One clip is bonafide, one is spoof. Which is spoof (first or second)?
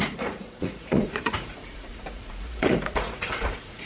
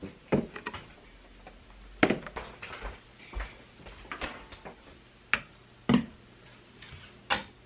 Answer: first